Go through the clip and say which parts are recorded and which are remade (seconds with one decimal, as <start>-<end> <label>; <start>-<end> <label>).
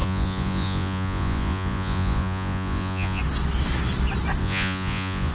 0.0-3.2 remade; 3.2-4.4 recorded; 4.4-5.3 remade